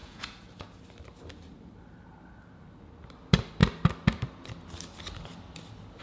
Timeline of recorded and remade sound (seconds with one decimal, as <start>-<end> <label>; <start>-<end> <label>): 0.0-0.8 remade; 0.8-6.0 recorded